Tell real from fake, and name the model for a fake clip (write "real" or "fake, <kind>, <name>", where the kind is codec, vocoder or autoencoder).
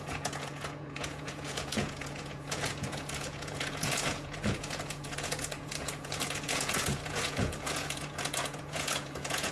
fake, vocoder, Vocos